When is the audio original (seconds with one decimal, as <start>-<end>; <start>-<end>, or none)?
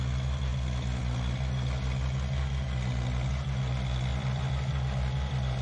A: 0.0-4.1; 4.7-5.6